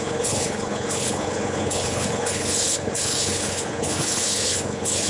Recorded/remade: remade